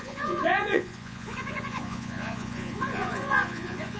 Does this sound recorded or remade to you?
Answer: remade